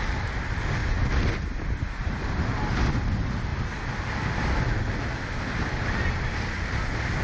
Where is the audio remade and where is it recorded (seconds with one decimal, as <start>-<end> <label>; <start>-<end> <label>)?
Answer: 0.0-0.8 remade; 0.8-2.1 recorded; 2.1-3.5 remade; 3.5-6.1 recorded; 6.1-7.2 remade